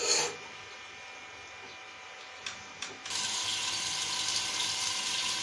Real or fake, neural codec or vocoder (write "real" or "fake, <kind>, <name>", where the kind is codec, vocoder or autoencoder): real